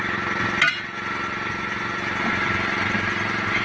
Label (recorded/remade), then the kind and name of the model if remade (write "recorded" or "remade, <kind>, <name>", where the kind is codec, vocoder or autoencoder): recorded